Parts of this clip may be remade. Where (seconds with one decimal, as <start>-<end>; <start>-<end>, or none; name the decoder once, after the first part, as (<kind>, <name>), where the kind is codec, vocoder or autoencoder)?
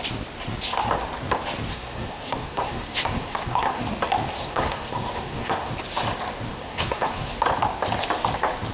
1.7-3.8 (codec, SNAC); 4.4-5.7; 6.5-7.3